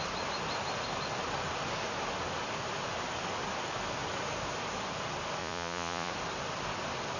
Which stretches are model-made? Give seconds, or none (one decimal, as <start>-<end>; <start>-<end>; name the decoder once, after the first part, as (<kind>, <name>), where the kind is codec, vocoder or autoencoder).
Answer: 5.4-6.1 (vocoder, Vocos)